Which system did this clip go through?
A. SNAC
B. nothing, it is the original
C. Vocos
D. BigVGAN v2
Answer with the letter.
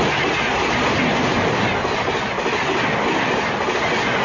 B